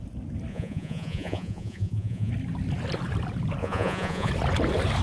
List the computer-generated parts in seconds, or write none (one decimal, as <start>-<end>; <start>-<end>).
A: 0.5-2.3; 3.6-4.3